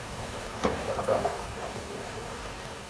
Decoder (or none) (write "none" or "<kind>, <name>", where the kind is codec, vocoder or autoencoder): codec, DAC